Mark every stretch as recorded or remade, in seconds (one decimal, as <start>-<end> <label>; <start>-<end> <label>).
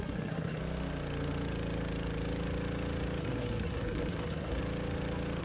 0.0-0.6 remade; 0.6-3.2 recorded; 3.2-4.6 remade; 4.6-5.4 recorded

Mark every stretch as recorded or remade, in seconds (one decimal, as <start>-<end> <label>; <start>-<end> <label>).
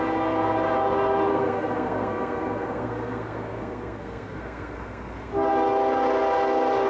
0.0-1.3 recorded; 1.3-5.3 remade; 5.3-6.9 recorded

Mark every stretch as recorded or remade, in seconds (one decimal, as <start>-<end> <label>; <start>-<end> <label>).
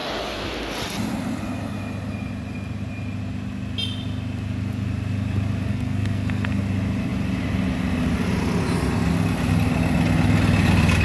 0.0-5.7 recorded; 5.7-6.6 remade; 6.6-11.0 recorded